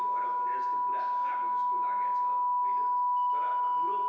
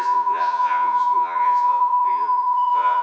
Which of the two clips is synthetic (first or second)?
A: second